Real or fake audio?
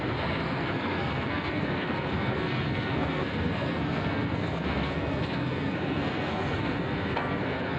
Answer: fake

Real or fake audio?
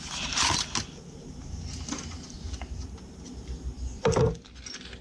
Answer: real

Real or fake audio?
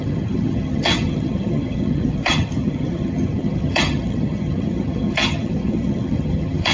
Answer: fake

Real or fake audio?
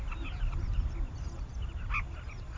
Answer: real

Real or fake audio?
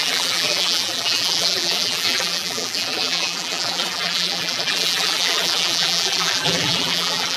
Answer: fake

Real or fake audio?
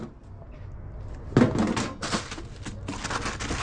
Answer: real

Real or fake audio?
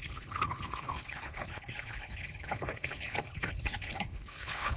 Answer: fake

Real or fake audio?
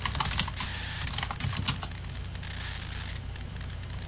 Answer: real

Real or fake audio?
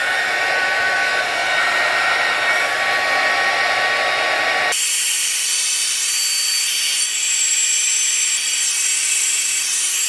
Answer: fake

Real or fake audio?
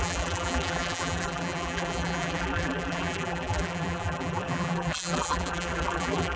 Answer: fake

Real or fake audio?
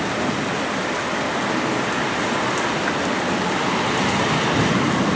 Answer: real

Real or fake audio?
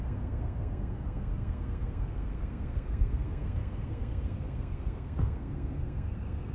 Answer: fake